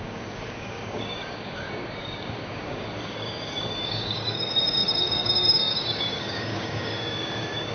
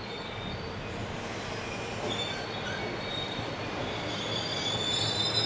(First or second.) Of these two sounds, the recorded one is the second